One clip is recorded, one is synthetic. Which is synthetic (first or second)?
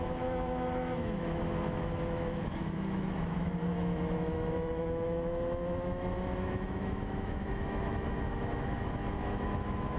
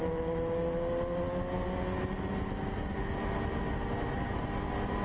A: first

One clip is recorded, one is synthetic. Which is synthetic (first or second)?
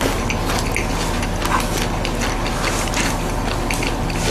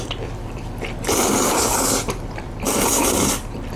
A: second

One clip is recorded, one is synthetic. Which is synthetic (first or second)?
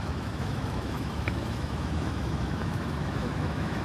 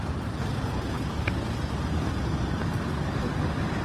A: first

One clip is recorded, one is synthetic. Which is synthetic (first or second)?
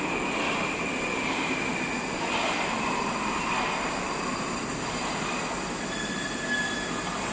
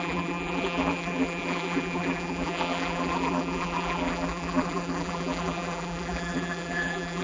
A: second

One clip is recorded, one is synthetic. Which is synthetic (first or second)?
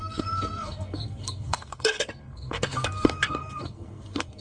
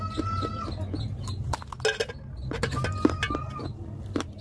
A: first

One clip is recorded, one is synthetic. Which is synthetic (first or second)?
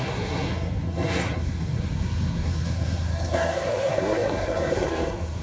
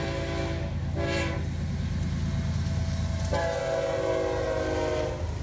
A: first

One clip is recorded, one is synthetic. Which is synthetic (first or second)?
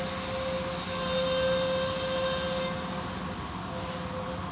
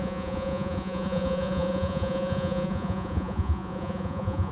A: second